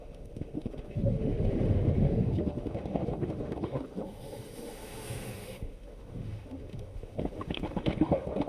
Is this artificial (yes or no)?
yes